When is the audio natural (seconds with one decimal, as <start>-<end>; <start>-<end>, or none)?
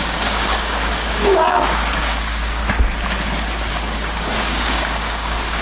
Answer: 2.6-3.7